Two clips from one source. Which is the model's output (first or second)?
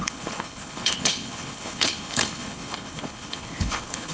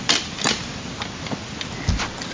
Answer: first